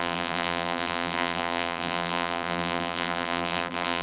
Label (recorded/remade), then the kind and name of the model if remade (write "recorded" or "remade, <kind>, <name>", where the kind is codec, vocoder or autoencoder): remade, vocoder, BigVGAN v2